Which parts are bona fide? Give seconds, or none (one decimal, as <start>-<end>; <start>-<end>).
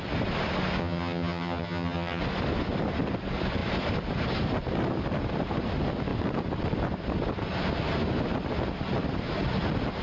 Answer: 0.0-0.8; 2.2-10.0